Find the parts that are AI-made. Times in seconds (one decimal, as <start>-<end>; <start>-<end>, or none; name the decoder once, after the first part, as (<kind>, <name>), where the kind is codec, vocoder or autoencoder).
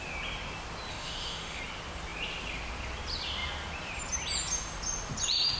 0.9-1.6 (autoencoder, DAC-VAE)